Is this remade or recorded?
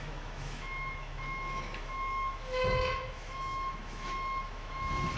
remade